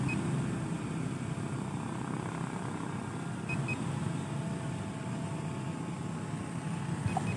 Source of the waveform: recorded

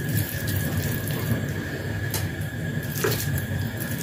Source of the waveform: remade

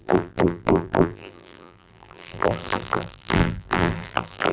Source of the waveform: remade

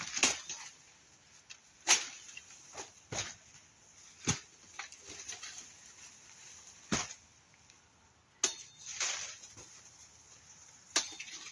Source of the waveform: recorded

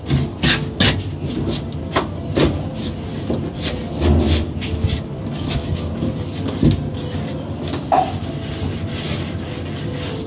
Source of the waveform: recorded